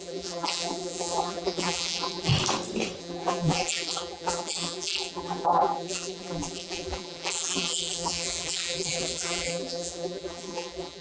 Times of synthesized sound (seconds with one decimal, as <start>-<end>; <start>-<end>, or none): 0.0-2.3; 3.0-11.0

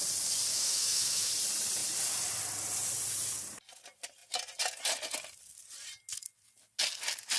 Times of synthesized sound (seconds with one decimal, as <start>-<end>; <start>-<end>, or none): 0.5-1.3

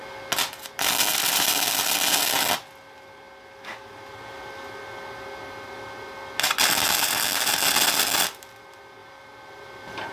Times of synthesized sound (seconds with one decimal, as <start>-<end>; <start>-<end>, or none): 1.1-1.9; 9.0-10.1

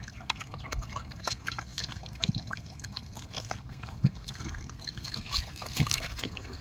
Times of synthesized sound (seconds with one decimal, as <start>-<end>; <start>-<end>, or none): 0.0-6.6